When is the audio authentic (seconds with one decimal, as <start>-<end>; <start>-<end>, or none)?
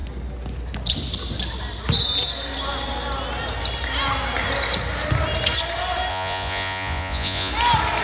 0.0-6.1; 7.5-8.0